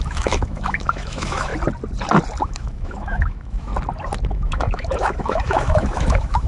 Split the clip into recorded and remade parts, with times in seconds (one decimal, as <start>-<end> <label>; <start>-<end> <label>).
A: 0.0-1.5 remade; 1.5-2.4 recorded; 2.4-3.7 remade; 3.7-4.3 recorded; 4.3-6.5 remade